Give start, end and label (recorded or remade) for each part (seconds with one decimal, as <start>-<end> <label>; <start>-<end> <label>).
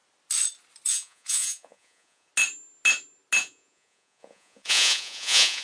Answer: 0.0-0.9 recorded; 0.9-2.3 remade; 2.3-3.4 recorded; 3.4-5.6 remade